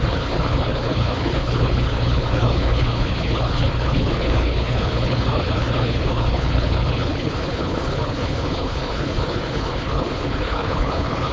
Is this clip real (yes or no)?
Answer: no